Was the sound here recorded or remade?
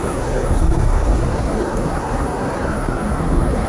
remade